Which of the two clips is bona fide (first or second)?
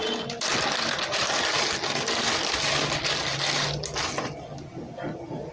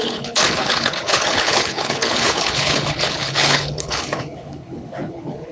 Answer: first